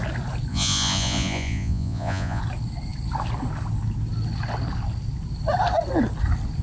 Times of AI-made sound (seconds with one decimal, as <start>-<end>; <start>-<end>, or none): 0.5-2.4